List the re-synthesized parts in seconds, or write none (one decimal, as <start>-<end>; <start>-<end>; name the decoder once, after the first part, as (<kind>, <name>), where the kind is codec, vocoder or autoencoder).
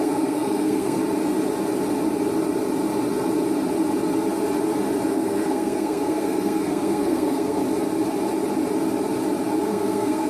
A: 0.0-1.0 (codec, SNAC); 5.1-7.6; 9.6-10.3